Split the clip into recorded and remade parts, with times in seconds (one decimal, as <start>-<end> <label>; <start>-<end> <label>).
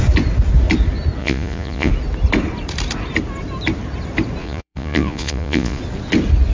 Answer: 0.0-1.2 recorded; 1.2-1.9 remade; 1.9-4.4 recorded; 4.4-5.8 remade; 5.8-6.5 recorded